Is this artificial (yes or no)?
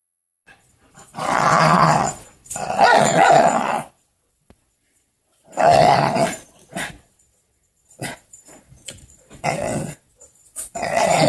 yes